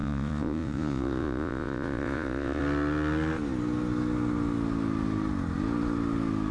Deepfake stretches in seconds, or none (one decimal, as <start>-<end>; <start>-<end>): 0.0-2.6